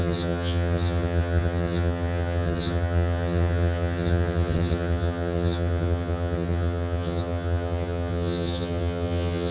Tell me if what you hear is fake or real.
fake